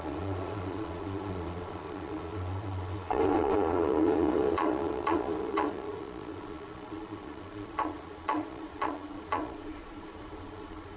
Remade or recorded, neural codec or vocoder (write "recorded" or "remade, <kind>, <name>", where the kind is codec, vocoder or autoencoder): remade, vocoder, Vocos